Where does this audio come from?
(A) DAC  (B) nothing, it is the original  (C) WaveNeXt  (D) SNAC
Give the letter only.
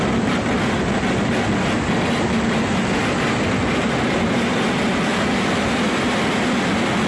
B